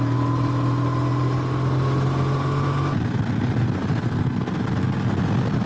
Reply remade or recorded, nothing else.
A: recorded